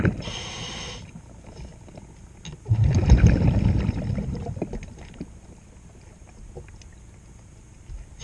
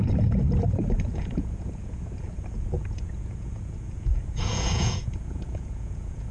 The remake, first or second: second